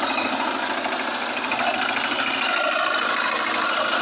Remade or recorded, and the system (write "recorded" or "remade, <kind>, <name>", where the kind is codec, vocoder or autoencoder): recorded